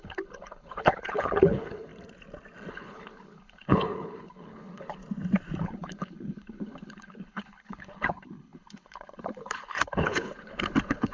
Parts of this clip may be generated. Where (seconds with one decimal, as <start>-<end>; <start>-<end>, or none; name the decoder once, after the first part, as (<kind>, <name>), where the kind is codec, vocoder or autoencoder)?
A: 0.0-1.9 (codec, HILCodec); 2.7-5.0; 5.6-11.1